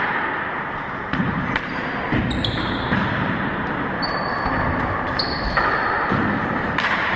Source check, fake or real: fake